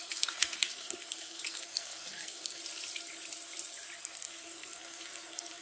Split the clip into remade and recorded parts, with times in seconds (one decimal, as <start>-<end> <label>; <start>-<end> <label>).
0.0-2.6 remade; 2.6-4.0 recorded; 4.0-5.6 remade